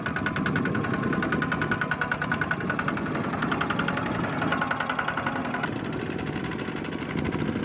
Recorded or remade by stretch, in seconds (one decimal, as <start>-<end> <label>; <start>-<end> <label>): 0.0-7.6 recorded

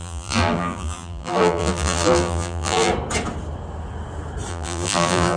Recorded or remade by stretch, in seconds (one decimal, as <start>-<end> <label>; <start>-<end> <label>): 0.0-2.9 remade; 2.9-4.5 recorded; 4.5-5.4 remade

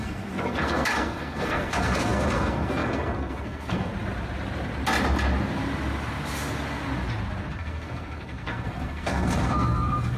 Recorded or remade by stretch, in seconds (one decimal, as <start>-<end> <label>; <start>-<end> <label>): 0.0-3.9 remade; 3.9-7.5 recorded; 7.5-10.2 remade

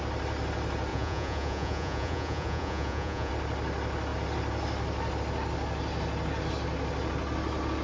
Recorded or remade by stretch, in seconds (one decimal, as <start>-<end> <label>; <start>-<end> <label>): 0.0-0.9 recorded; 0.9-3.3 remade; 3.3-7.8 recorded

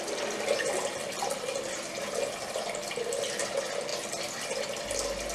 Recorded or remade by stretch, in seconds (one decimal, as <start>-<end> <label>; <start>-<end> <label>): 0.0-0.9 recorded; 0.9-2.9 remade; 2.9-5.3 recorded

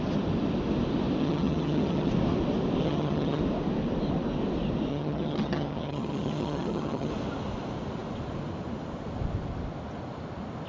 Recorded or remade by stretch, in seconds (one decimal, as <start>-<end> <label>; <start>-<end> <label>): 0.0-1.2 recorded; 1.2-2.1 remade; 2.1-2.8 recorded; 2.8-3.4 remade; 3.4-4.9 recorded; 4.9-7.1 remade; 7.1-10.7 recorded